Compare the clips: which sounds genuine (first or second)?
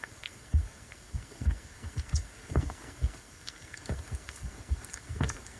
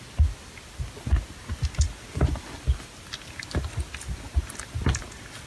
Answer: second